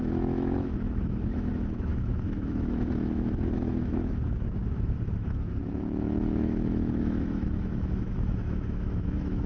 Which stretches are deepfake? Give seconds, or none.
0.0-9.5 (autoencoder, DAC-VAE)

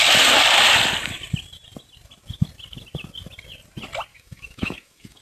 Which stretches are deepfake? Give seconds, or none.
4.1-5.2 (autoencoder, DAC-VAE)